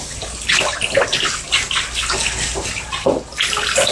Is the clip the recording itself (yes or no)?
yes